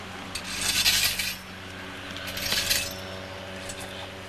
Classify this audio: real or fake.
real